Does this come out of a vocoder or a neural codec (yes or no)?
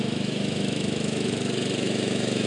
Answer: yes